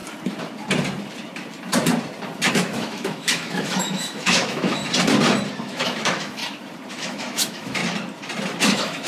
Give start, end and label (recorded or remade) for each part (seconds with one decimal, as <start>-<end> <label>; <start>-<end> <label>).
0.0-2.5 recorded; 2.5-4.8 remade; 4.8-5.6 recorded; 5.6-6.4 remade; 6.4-6.9 recorded; 6.9-7.8 remade; 7.8-8.6 recorded; 8.6-9.1 remade